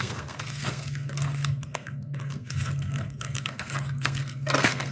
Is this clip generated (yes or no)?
yes